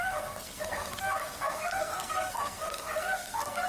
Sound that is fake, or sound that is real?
fake